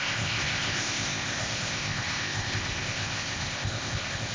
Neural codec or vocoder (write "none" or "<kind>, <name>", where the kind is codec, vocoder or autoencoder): codec, ZipCodec